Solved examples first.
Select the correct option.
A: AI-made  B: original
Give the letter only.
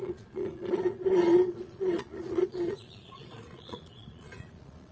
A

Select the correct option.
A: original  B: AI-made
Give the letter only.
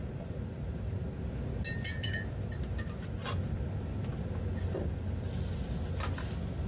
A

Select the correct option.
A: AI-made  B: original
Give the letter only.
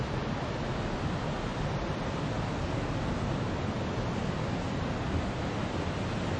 B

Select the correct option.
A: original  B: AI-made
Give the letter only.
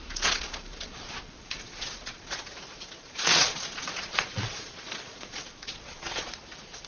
B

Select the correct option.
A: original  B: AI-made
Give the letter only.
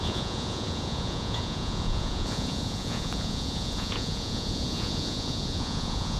B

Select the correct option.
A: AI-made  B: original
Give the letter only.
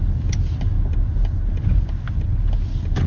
B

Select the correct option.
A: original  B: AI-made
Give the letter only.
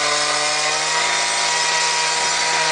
A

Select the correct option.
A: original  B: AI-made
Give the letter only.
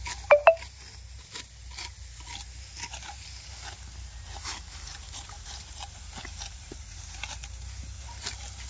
A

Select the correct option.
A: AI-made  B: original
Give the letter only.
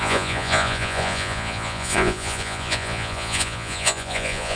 A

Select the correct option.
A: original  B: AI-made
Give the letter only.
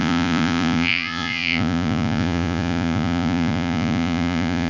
B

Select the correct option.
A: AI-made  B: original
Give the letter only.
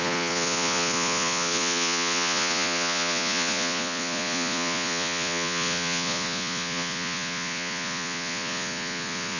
A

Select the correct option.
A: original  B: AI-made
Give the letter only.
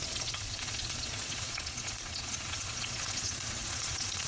B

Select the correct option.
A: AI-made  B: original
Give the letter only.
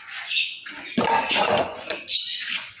A